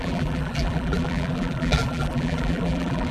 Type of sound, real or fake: fake